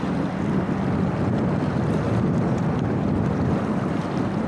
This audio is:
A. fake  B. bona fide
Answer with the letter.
B